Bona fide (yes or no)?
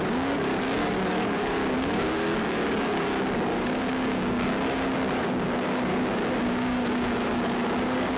no